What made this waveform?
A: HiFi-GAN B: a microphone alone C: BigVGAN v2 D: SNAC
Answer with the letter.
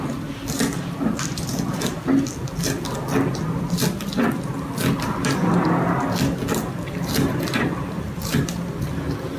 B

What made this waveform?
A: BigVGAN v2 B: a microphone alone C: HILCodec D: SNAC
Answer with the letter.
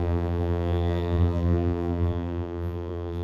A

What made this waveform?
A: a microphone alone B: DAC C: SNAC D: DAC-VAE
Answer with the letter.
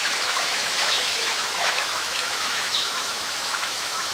D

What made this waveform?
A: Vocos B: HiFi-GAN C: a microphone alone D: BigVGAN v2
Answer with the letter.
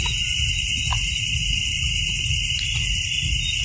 C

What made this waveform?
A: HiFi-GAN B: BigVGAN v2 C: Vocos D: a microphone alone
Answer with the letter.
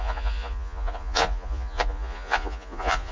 C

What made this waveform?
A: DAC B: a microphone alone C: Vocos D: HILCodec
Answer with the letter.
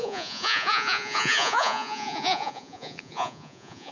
C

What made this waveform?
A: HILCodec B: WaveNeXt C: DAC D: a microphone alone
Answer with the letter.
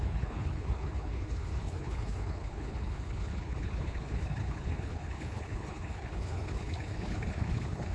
A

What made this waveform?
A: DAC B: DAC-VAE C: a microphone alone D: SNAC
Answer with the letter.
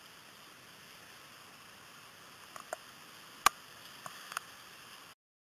C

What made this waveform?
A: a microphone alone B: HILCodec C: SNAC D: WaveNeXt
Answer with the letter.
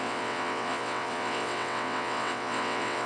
D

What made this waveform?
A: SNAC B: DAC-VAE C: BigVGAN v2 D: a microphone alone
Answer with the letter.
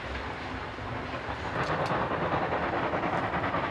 D